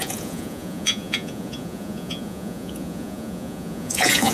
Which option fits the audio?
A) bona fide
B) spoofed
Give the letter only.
B